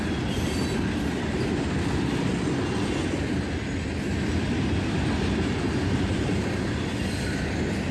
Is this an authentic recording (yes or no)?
yes